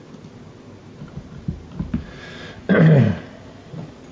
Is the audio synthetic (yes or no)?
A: no